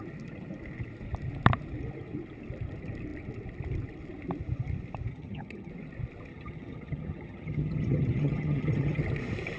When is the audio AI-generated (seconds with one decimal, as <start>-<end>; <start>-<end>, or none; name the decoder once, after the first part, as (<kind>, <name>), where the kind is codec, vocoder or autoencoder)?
5.1-5.7 (vocoder, HiFi-GAN); 6.3-9.0